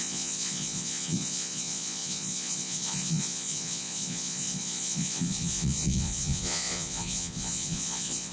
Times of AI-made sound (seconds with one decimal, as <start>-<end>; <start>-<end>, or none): 0.0-8.3